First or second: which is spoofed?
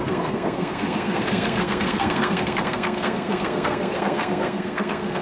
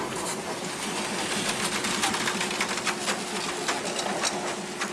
first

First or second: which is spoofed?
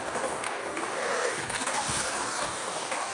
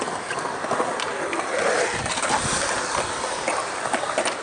first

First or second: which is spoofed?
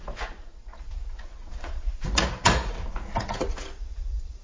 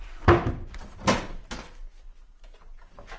first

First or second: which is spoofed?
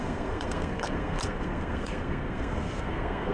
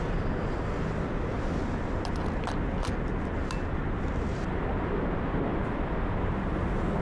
first